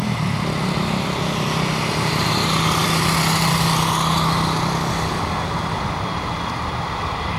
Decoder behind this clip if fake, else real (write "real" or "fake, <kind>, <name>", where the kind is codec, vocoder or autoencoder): real